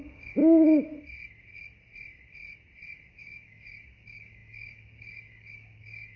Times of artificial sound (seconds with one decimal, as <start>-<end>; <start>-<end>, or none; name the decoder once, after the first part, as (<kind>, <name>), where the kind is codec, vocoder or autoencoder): 0.0-0.4 (codec, DAC); 3.1-6.2